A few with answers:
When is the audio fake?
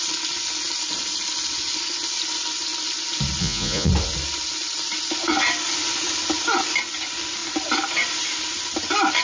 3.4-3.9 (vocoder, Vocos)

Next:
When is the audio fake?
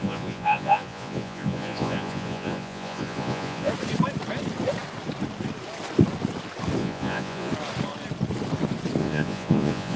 0.0-3.7 (vocoder, Vocos); 6.8-7.5; 9.0-10.0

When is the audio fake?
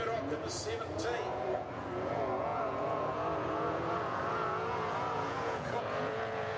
0.0-6.6 (vocoder, Vocos)